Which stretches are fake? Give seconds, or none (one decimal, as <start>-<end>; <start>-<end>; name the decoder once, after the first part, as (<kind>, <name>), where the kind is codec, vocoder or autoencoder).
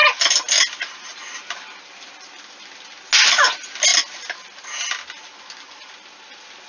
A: none